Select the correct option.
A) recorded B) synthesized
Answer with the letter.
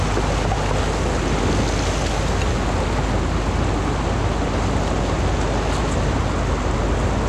A